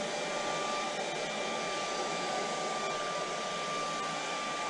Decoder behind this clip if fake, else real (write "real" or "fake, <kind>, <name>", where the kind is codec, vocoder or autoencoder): real